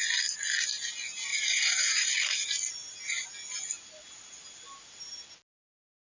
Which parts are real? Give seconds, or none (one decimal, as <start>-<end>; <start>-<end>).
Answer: 0.0-1.3; 2.1-6.0